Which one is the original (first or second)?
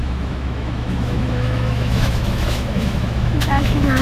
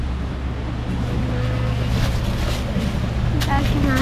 second